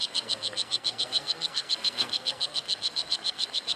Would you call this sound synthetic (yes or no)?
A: yes